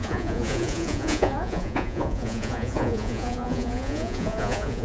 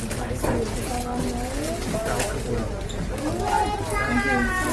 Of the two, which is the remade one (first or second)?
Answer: first